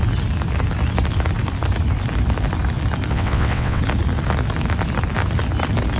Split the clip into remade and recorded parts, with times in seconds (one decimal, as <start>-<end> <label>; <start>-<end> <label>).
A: 0.0-3.1 recorded; 3.1-3.8 remade; 3.8-6.0 recorded